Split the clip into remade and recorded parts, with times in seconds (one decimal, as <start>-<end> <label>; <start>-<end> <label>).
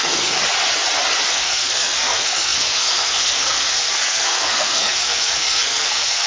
0.0-0.4 remade; 0.4-1.3 recorded; 1.3-6.3 remade